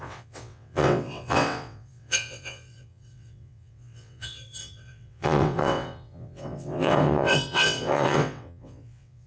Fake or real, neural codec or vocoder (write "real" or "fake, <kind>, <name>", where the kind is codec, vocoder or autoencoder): fake, vocoder, WaveNeXt